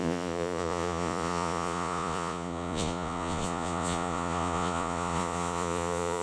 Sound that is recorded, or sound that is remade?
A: remade